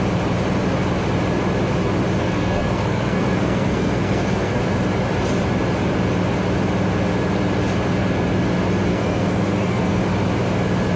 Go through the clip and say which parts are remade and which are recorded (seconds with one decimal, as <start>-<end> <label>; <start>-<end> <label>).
0.0-2.2 recorded; 2.2-4.6 remade; 4.6-8.9 recorded; 8.9-10.0 remade; 10.0-11.0 recorded